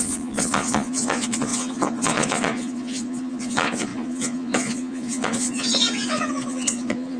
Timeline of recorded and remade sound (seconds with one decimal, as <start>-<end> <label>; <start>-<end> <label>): 0.0-7.2 remade